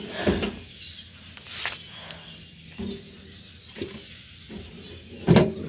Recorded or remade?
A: recorded